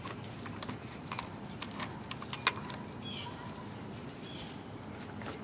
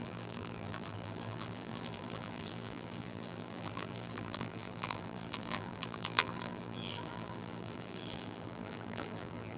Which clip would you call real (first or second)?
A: first